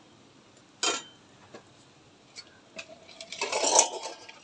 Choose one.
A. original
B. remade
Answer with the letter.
A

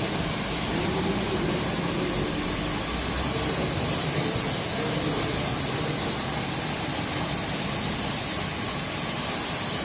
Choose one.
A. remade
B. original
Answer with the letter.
B